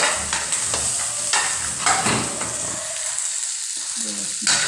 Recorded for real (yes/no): yes